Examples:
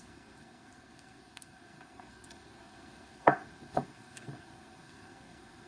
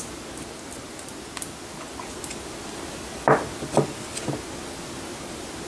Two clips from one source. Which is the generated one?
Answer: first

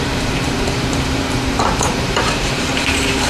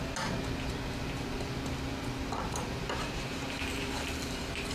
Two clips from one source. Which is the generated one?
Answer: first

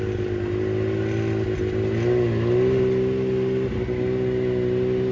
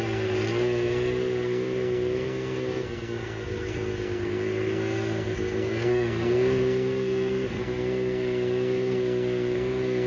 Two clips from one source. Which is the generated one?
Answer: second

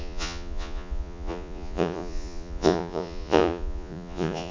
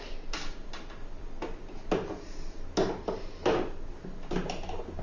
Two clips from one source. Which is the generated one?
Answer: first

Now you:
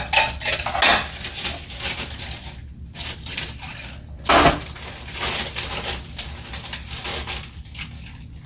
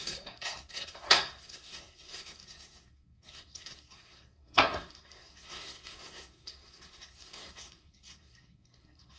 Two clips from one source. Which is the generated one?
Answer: second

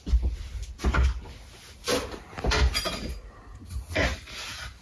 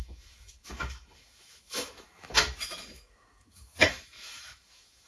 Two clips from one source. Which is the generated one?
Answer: second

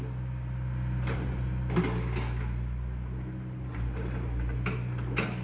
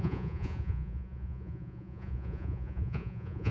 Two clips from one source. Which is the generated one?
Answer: second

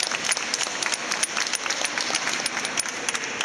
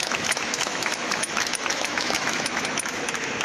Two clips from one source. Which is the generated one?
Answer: second